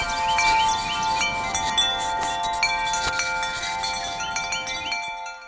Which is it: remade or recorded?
recorded